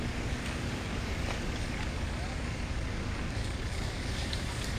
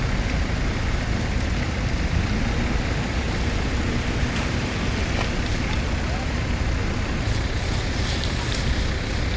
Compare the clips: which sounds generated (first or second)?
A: first